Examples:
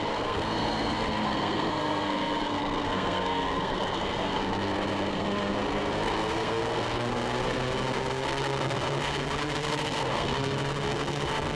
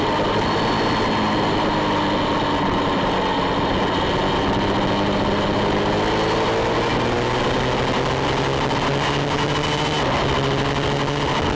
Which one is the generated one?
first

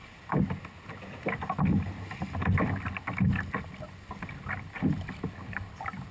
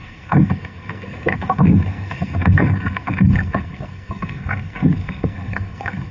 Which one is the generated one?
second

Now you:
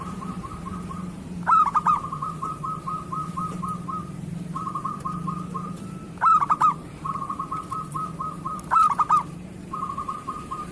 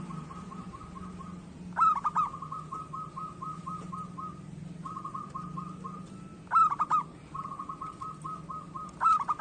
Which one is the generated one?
first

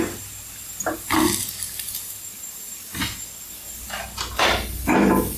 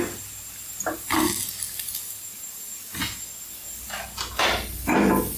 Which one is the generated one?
first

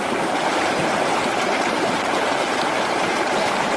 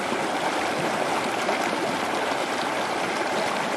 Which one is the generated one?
first